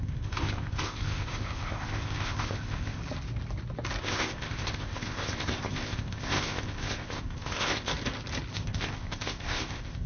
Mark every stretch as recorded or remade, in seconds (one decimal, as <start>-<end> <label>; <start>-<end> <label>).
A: 0.0-3.0 remade; 3.0-4.0 recorded; 4.0-7.9 remade; 7.9-8.5 recorded; 8.5-10.1 remade